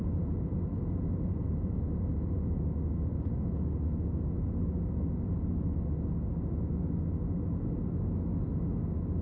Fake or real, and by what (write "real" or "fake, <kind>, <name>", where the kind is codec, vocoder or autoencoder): real